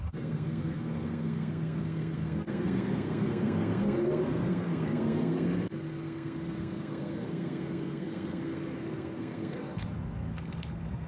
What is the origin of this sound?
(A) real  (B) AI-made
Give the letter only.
B